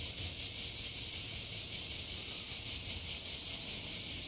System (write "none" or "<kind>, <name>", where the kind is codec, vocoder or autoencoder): none